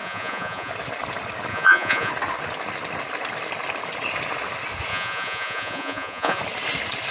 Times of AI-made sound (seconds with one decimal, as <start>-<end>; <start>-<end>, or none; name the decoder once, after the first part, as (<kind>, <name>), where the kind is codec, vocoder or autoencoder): 0.0-0.7 (vocoder, Vocos); 1.5-2.1; 4.9-6.4